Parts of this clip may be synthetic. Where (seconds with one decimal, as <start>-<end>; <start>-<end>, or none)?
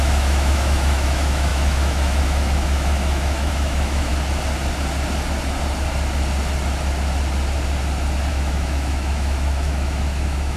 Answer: 0.0-4.1; 8.3-10.6